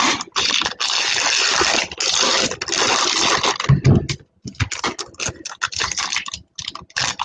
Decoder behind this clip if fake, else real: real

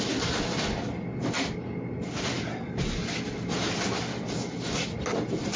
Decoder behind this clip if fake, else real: real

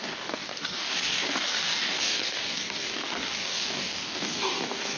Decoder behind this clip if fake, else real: fake, codec, DAC